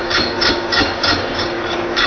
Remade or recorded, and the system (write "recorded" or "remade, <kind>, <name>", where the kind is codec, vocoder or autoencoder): remade, codec, DAC